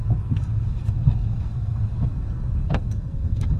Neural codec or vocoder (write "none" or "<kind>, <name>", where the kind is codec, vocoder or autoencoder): codec, SNAC